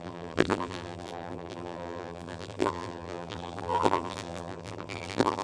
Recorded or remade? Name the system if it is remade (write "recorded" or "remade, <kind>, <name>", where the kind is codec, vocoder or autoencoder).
remade, vocoder, BigVGAN v2